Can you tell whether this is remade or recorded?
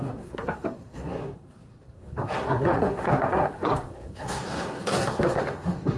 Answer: remade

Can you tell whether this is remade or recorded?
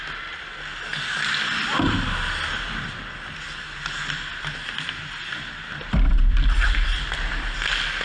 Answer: recorded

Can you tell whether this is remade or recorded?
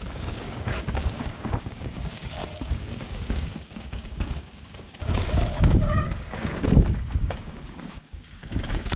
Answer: remade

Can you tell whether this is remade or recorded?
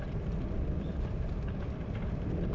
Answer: remade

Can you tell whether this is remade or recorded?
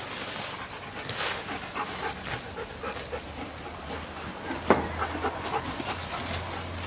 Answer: recorded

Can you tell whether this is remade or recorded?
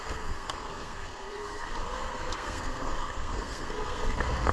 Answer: remade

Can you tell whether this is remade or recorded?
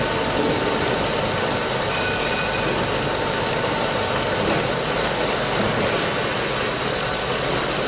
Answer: recorded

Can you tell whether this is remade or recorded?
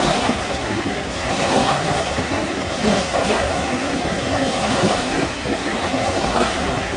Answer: remade